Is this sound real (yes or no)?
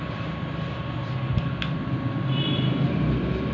yes